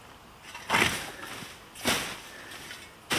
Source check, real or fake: real